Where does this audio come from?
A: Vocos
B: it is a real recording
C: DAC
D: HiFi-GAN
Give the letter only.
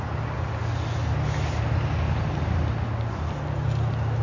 B